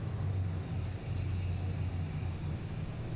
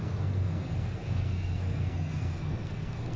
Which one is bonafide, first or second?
first